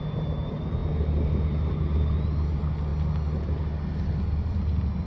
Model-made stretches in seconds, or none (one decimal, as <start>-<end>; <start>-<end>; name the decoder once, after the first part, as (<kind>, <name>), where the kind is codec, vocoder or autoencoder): none